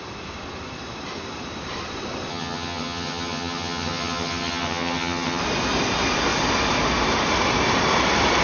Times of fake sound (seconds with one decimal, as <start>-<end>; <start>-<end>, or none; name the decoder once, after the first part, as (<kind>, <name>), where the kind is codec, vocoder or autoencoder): 2.3-5.4 (vocoder, HiFi-GAN)